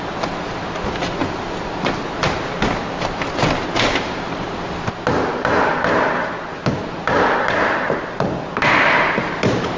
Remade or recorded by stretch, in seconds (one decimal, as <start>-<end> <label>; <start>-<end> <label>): 0.0-9.8 recorded

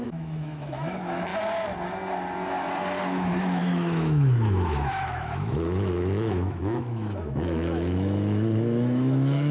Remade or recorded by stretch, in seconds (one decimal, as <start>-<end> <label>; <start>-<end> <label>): 0.0-1.3 remade; 1.3-3.0 recorded; 3.0-9.5 remade

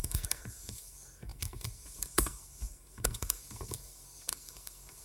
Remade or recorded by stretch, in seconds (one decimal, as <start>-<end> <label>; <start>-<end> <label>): 0.0-5.0 remade

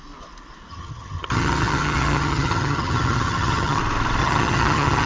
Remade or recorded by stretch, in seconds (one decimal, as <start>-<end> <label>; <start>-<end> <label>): 0.0-0.7 recorded; 0.7-3.8 remade; 3.8-4.2 recorded; 4.2-5.1 remade